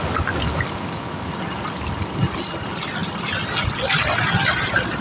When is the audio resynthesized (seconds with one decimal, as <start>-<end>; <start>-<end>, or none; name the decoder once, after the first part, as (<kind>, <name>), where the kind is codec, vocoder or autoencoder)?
none